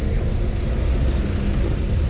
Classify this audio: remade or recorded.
recorded